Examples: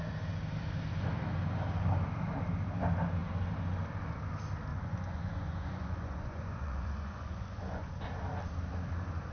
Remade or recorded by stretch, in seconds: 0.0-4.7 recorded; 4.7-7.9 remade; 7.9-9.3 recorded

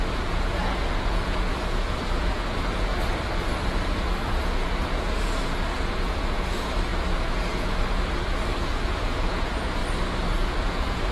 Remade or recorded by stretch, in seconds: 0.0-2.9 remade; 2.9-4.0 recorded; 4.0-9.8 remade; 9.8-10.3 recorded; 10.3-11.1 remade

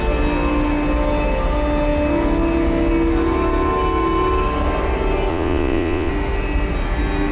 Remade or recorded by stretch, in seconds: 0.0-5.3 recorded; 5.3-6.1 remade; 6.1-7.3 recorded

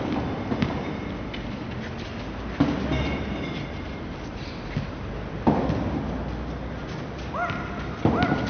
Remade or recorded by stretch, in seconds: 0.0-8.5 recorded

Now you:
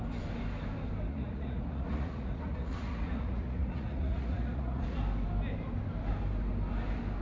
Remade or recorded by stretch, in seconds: 0.0-1.1 recorded; 1.1-5.0 remade; 5.0-7.2 recorded

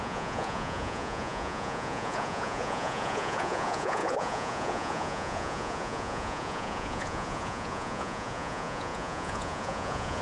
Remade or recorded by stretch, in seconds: 0.0-10.2 remade

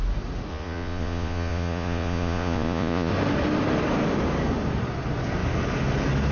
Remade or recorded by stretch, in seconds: 0.0-0.5 recorded; 0.5-3.1 remade; 3.1-6.3 recorded